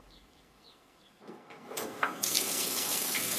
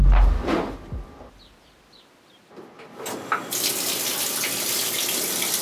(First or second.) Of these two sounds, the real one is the second